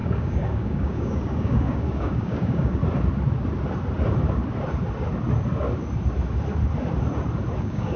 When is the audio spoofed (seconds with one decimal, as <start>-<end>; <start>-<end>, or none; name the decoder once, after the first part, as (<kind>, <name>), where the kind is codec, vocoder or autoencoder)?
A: 0.0-2.8 (codec, DAC); 7.6-8.0